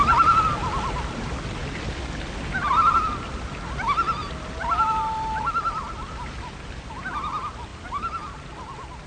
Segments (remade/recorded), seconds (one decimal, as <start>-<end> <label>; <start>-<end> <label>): 0.0-9.1 recorded